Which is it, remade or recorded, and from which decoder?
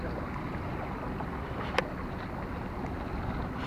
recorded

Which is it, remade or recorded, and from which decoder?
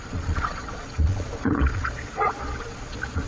remade, vocoder, Vocos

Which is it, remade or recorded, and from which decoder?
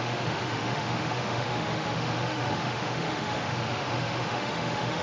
remade, autoencoder, DAC-VAE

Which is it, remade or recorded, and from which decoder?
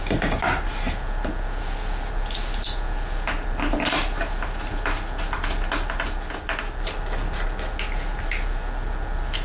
recorded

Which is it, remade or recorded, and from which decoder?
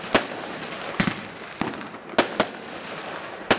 recorded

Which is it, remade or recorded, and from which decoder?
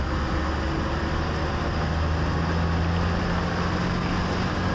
recorded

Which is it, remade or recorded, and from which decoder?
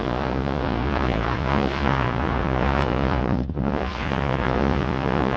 remade, vocoder, Vocos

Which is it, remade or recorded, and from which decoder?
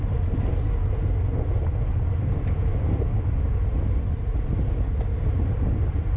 recorded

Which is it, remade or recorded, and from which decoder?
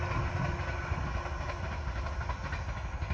recorded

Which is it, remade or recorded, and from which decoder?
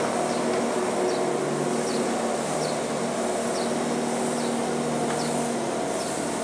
recorded